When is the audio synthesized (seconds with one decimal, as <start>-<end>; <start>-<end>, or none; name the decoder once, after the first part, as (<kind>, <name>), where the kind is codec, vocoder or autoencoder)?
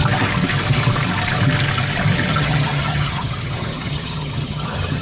2.3-5.0 (vocoder, HiFi-GAN)